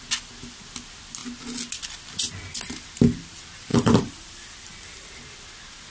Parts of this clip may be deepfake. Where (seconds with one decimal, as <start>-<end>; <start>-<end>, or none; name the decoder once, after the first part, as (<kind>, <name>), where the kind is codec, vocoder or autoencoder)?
3.7-5.2 (vocoder, BigVGAN v2)